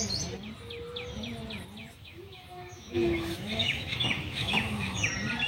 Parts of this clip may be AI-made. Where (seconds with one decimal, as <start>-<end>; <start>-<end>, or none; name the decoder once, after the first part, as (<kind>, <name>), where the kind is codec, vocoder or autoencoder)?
1.8-5.1 (autoencoder, DAC-VAE)